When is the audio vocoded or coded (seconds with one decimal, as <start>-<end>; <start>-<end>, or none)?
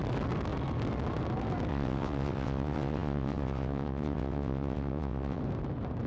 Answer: 1.7-5.4